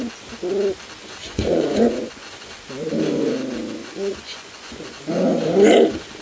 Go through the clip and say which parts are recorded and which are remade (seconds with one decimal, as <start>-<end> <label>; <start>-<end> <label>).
0.0-1.2 recorded; 1.2-2.5 remade; 2.5-3.8 recorded; 3.8-5.0 remade; 5.0-6.2 recorded